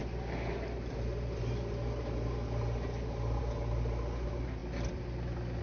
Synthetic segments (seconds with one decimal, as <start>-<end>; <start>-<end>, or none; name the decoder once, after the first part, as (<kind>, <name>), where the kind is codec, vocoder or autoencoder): none

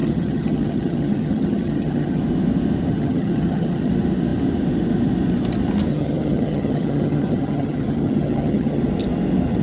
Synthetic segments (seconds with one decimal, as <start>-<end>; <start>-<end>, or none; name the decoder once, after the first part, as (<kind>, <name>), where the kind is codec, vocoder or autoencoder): 0.0-2.2 (vocoder, HiFi-GAN); 2.9-3.9; 5.9-8.8

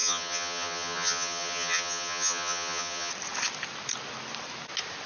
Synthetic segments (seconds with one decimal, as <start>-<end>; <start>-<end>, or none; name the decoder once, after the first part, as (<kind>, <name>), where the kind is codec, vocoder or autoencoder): 0.0-3.1 (vocoder, HiFi-GAN)

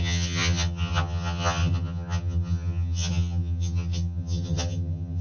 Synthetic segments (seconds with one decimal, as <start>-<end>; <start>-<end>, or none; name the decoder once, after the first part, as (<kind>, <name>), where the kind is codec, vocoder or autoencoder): 0.0-5.2 (vocoder, HiFi-GAN)

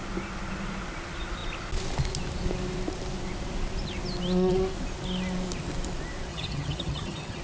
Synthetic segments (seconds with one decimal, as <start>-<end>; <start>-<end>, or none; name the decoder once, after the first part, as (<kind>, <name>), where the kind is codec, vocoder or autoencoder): 6.3-7.4 (vocoder, HiFi-GAN)

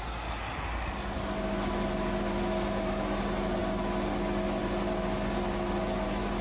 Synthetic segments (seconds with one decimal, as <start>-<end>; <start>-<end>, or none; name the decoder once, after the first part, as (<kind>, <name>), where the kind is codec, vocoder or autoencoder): none